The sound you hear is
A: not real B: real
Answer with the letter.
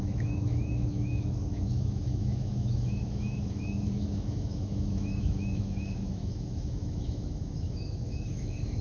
A